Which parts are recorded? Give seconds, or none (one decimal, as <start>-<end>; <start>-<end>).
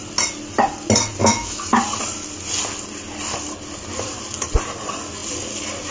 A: 0.0-1.2; 1.8-5.9